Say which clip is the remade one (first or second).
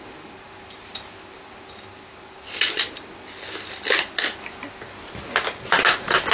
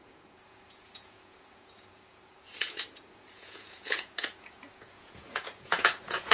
second